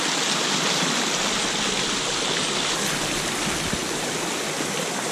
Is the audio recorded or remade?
recorded